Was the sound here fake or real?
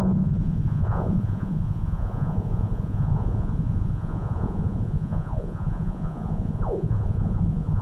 fake